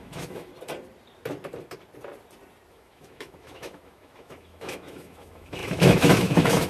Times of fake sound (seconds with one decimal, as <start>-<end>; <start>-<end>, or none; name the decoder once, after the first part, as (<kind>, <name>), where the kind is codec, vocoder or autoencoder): 0.0-0.5 (autoencoder, DAC-VAE); 2.7-6.7